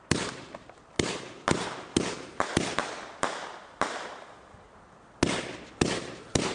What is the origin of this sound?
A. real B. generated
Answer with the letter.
A